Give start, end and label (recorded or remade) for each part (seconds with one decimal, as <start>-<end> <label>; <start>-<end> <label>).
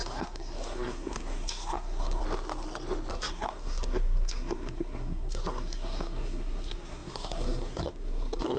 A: 0.0-2.2 remade; 2.2-3.1 recorded; 3.1-8.6 remade